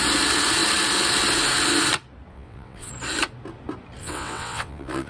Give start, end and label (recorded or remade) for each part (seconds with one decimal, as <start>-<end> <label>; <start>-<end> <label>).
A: 0.0-2.3 recorded; 2.3-2.9 remade; 2.9-4.0 recorded; 4.0-5.1 remade